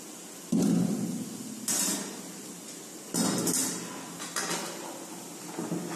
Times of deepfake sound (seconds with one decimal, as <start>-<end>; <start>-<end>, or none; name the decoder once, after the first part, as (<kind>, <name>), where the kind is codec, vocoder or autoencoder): none